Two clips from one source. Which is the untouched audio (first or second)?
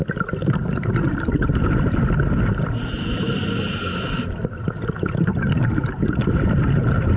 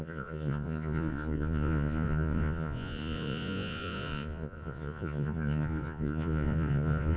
first